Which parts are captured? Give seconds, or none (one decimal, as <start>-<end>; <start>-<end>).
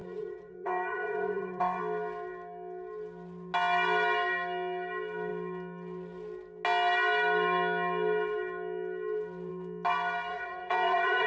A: 1.8-10.3